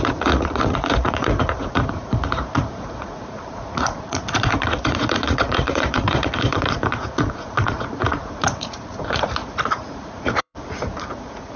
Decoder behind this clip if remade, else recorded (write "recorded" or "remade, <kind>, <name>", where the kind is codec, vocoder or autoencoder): remade, vocoder, Vocos